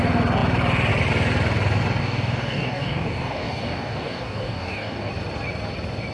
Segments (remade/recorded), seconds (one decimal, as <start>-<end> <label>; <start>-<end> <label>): 0.0-2.0 recorded; 2.0-5.1 remade; 5.1-6.1 recorded